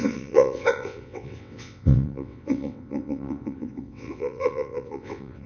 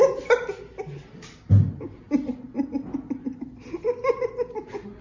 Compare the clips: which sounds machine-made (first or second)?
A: first